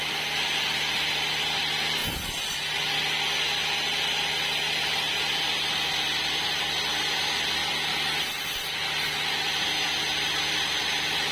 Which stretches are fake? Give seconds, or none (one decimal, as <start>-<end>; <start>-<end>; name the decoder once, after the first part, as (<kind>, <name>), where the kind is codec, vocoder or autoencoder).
none